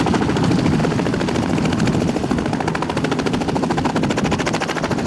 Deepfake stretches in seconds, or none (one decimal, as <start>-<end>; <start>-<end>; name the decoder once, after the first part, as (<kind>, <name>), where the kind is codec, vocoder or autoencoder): none